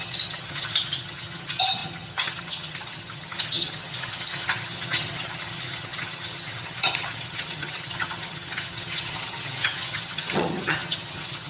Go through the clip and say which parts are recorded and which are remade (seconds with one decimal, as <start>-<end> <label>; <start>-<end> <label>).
0.0-11.5 remade